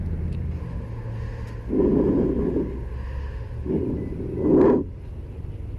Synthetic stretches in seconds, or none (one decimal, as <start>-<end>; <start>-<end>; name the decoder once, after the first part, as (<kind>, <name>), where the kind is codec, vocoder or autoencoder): 0.6-1.7 (autoencoder, DAC-VAE); 2.4-3.8

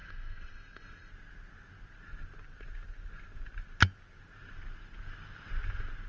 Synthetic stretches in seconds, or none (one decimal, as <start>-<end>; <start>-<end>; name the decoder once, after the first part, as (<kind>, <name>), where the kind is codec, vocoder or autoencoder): 0.0-1.1 (autoencoder, DAC-VAE)

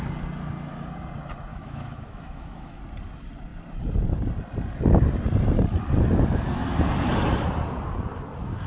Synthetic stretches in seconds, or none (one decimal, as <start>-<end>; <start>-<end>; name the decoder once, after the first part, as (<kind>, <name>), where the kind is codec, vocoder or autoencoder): 1.5-2.8 (autoencoder, DAC-VAE)